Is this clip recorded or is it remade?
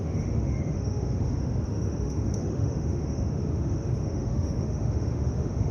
remade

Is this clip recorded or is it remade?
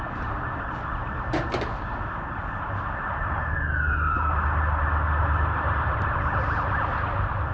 recorded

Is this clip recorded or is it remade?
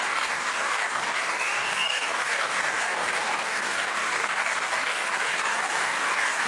remade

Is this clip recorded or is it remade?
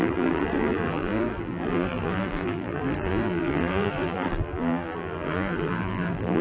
remade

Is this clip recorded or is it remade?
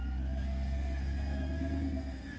remade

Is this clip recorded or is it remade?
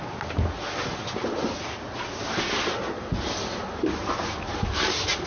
recorded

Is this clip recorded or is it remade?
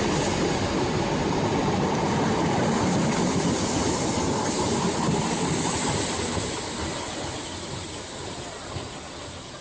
recorded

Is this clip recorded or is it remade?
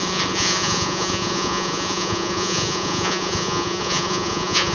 remade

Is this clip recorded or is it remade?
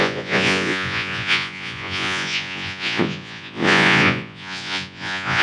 remade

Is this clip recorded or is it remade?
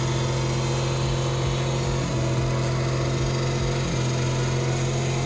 recorded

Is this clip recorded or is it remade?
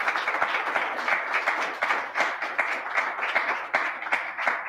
recorded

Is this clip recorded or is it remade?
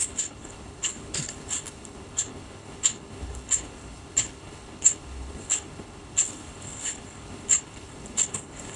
remade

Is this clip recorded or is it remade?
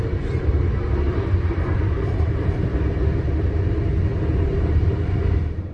remade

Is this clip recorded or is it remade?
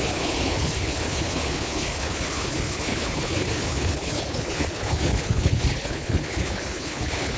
remade